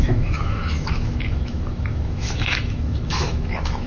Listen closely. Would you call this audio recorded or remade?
remade